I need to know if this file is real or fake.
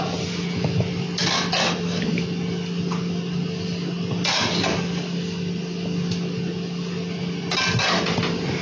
real